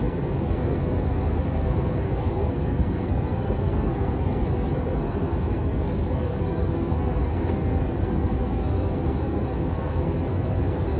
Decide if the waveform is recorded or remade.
remade